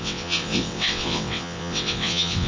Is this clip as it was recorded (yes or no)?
no